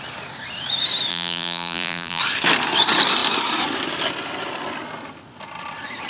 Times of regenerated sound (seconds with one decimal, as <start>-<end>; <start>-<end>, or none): 1.1-2.2